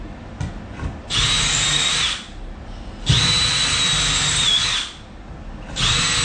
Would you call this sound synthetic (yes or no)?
no